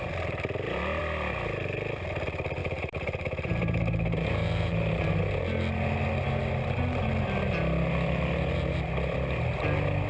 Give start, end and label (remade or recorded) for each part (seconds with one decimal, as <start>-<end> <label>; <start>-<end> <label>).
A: 0.0-2.6 recorded; 2.6-5.2 remade; 5.2-10.1 recorded